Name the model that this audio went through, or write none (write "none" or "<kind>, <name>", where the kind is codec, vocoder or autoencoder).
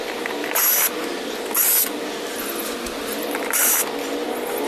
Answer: none